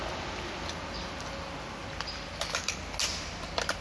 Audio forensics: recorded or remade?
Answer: recorded